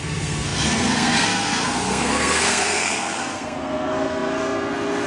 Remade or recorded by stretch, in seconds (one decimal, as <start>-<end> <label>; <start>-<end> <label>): 0.0-5.1 remade